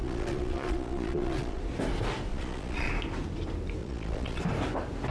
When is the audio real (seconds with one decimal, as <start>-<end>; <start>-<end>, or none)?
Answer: 1.6-2.3; 2.9-3.8; 4.4-5.1